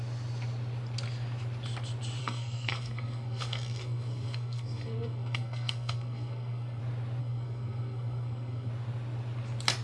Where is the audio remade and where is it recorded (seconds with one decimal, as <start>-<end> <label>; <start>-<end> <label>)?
0.0-2.2 recorded; 2.2-6.8 remade; 6.8-7.2 recorded; 7.2-8.7 remade; 8.7-9.8 recorded